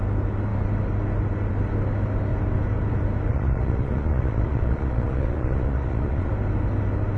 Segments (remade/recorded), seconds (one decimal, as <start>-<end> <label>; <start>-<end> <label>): 0.0-3.3 recorded; 3.3-6.3 remade; 6.3-7.2 recorded